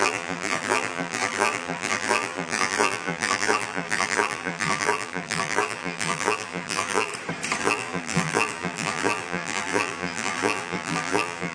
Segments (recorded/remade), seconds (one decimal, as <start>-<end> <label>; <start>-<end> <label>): 0.0-7.1 remade; 7.1-7.6 recorded; 7.6-11.5 remade